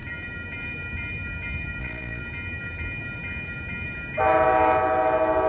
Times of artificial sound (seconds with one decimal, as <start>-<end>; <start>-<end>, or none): 1.8-2.2